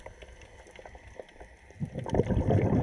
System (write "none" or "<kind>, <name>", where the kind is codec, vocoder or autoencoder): vocoder, BigVGAN v2